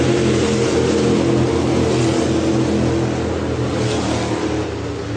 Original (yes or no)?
yes